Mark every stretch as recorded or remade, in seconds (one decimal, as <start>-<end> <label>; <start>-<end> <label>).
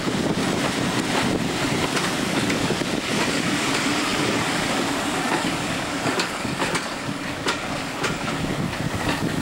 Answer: 0.0-0.4 remade; 0.4-1.8 recorded; 1.8-9.4 remade